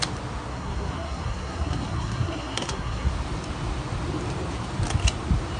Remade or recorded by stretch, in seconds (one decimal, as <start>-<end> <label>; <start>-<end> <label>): 0.0-0.5 recorded; 0.5-3.1 remade; 3.1-5.6 recorded